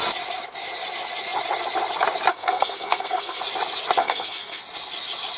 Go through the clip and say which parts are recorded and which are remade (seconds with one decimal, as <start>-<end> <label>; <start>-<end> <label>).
0.0-2.3 recorded; 2.3-3.4 remade; 3.4-4.0 recorded; 4.0-4.6 remade; 4.6-5.4 recorded